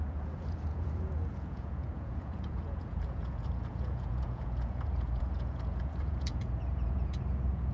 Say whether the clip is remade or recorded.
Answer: remade